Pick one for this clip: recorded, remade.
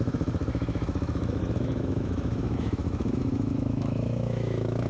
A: remade